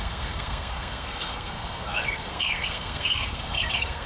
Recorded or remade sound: remade